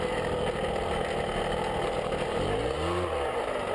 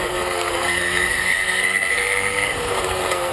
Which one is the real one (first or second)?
first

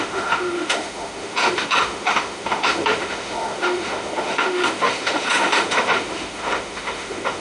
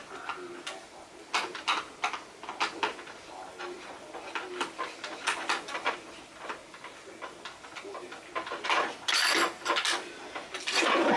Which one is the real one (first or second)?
second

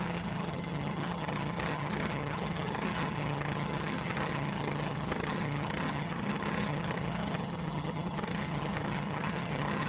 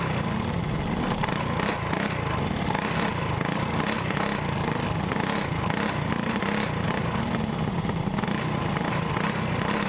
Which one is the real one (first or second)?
second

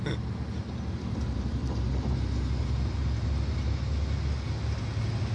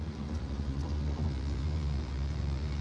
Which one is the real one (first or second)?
first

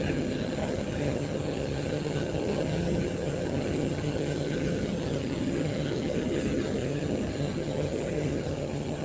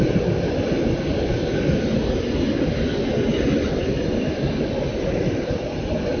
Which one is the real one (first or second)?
second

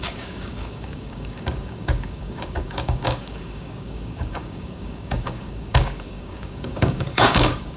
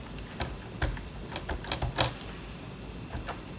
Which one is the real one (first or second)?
second